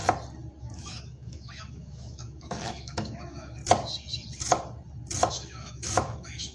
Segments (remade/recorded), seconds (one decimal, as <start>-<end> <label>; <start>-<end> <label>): 0.0-0.6 recorded; 0.6-3.6 remade; 3.6-5.3 recorded; 5.3-6.5 remade